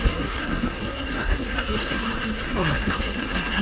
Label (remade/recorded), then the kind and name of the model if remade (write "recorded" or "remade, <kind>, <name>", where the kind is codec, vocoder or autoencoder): remade, codec, SNAC